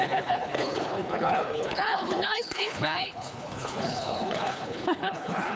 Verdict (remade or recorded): remade